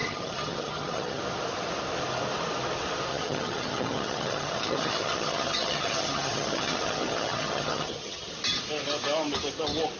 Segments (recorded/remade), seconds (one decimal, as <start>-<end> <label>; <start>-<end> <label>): 0.0-1.2 remade; 1.2-3.1 recorded; 3.1-8.3 remade; 8.3-10.0 recorded